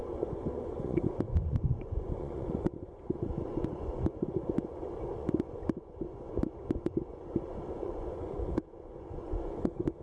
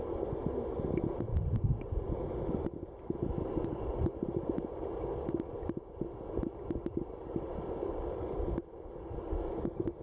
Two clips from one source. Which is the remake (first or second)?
first